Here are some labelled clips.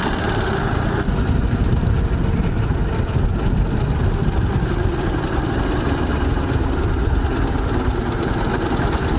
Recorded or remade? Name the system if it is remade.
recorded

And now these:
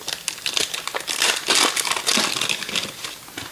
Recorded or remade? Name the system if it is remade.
recorded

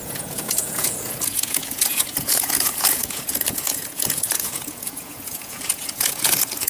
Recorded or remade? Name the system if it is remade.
remade, vocoder, Vocos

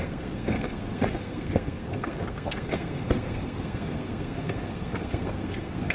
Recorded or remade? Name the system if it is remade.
remade, codec, SNAC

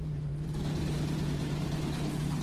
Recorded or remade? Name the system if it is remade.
remade, vocoder, BigVGAN v2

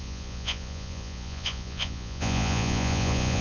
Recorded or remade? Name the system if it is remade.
remade, vocoder, Vocos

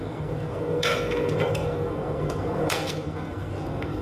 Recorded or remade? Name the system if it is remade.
remade, codec, SNAC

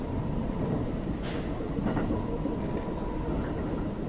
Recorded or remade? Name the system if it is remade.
recorded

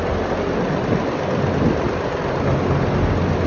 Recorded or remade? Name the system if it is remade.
recorded